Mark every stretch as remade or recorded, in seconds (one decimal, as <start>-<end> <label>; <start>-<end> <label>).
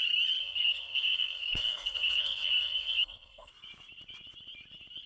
0.0-0.4 recorded; 0.4-3.5 remade; 3.5-5.1 recorded